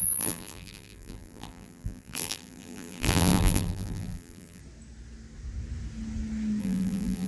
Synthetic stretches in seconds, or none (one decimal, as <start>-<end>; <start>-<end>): 0.0-4.6; 6.6-7.3